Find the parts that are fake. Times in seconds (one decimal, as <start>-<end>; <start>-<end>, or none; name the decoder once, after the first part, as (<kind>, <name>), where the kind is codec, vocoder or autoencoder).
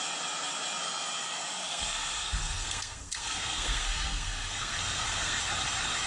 1.7-5.4 (codec, SNAC)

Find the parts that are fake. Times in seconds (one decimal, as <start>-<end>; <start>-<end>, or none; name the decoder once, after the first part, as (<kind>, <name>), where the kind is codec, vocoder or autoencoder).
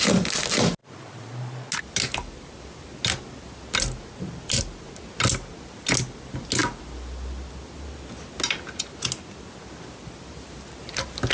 none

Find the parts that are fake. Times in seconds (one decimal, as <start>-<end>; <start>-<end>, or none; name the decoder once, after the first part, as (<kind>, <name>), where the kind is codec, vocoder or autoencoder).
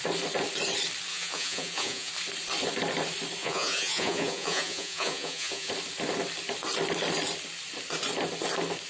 1.1-2.1 (vocoder, Vocos); 3.4-5.7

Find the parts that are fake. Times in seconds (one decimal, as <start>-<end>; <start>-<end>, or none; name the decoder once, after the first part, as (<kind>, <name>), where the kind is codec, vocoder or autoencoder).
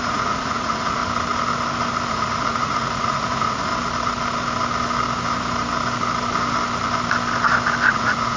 0.0-1.0 (vocoder, Vocos); 2.1-3.7; 7.9-8.4